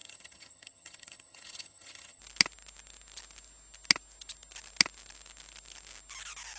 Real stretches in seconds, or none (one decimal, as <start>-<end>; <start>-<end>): 2.2-6.6